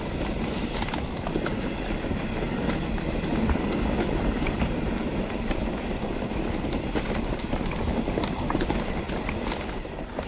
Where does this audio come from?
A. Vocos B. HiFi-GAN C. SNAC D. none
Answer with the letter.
D